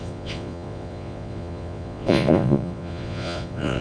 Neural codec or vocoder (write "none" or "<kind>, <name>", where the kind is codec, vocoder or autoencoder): vocoder, Vocos